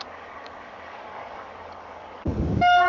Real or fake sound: fake